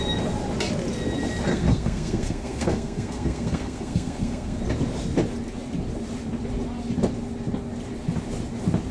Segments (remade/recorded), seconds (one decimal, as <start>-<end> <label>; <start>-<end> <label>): 0.0-1.5 recorded; 1.5-4.6 remade; 4.6-8.9 recorded